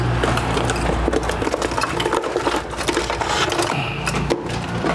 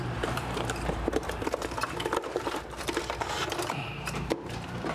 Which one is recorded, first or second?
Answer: first